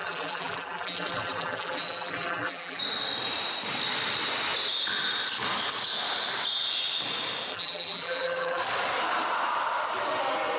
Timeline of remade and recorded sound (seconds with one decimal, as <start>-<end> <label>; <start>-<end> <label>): 0.0-2.8 remade; 2.8-7.5 recorded; 7.5-8.6 remade; 8.6-10.6 recorded